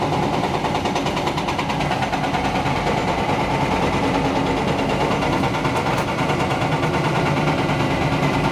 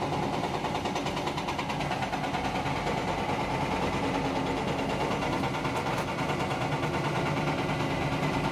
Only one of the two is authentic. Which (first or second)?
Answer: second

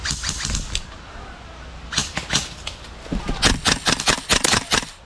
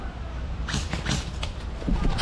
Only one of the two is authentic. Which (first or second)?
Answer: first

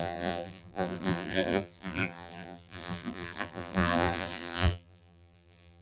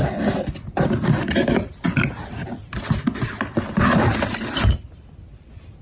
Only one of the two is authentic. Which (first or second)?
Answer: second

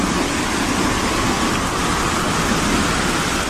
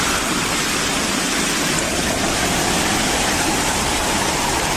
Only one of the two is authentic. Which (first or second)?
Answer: first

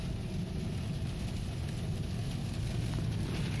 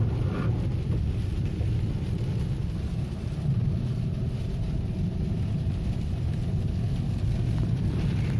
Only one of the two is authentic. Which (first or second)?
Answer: first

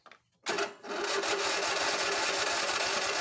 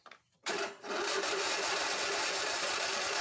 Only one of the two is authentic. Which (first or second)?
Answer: first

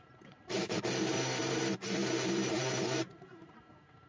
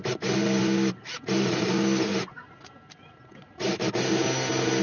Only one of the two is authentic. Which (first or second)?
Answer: second